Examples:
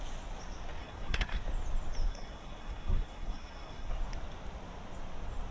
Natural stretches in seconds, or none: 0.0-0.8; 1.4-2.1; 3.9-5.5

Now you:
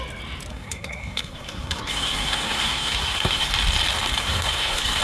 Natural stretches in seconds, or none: 0.0-0.5; 3.5-4.2

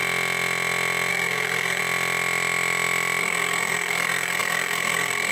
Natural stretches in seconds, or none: 0.0-1.1; 1.8-3.2